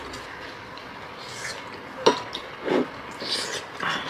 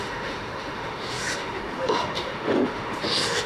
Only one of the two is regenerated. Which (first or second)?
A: second